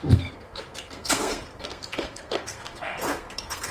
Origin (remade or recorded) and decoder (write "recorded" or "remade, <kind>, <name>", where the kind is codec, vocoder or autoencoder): remade, codec, SNAC